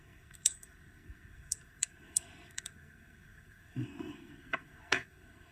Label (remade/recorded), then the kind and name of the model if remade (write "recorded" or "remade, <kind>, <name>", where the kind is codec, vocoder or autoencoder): remade, codec, SNAC